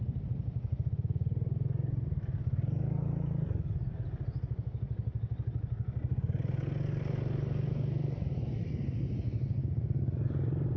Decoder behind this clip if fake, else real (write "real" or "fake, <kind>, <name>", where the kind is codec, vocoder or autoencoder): real